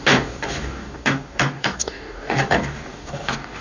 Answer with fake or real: fake